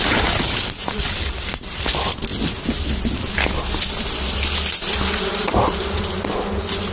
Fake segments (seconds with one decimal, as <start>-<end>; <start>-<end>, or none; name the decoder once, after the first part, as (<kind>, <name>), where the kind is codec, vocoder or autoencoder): 0.8-1.8 (vocoder, BigVGAN v2); 5.3-6.0